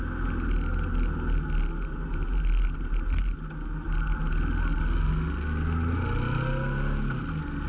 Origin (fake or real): real